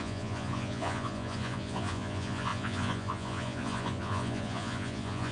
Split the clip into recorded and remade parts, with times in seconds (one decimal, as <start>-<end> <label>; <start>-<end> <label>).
0.0-5.3 remade